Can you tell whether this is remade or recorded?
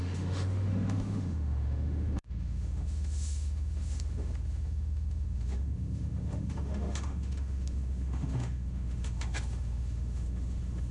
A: remade